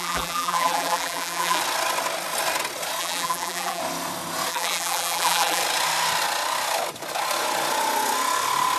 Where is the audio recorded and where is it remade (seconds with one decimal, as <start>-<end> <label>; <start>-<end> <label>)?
0.0-1.6 remade; 1.6-3.0 recorded; 3.0-3.8 remade; 3.8-4.5 recorded; 4.5-5.6 remade; 5.6-8.8 recorded